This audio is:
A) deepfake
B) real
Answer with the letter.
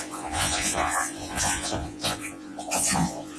A